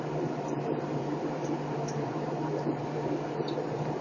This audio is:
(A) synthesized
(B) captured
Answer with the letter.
A